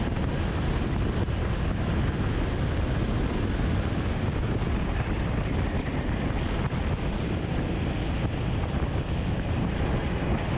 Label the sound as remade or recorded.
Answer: recorded